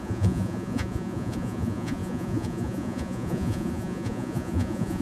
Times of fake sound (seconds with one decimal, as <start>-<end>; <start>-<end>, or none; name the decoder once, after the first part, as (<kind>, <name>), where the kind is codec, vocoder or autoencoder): 0.0-5.0 (vocoder, Vocos)